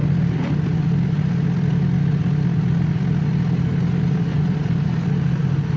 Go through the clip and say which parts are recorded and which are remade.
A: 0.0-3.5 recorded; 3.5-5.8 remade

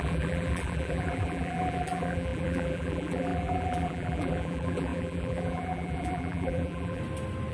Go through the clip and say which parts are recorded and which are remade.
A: 0.0-7.0 remade; 7.0-7.5 recorded

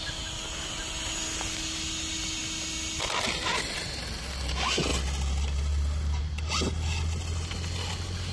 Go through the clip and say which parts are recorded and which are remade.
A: 0.0-8.3 recorded

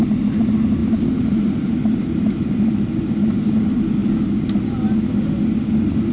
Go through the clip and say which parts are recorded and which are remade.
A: 0.0-0.8 recorded; 0.8-2.8 remade; 2.8-6.1 recorded

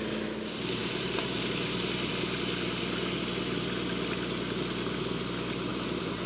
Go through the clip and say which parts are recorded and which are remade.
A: 0.0-0.8 recorded; 0.8-2.1 remade; 2.1-5.7 recorded; 5.7-6.3 remade

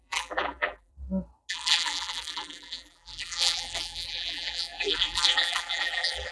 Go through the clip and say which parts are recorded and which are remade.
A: 0.0-0.9 remade; 0.9-1.5 recorded; 1.5-6.3 remade

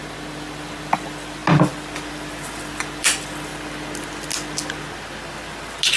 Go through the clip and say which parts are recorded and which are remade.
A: 0.0-1.4 remade; 1.4-2.1 recorded; 2.1-3.5 remade; 3.5-6.0 recorded